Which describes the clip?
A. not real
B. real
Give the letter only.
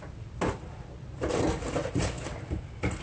B